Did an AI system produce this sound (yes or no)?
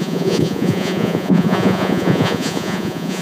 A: yes